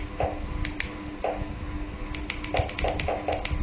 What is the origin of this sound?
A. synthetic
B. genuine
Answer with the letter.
B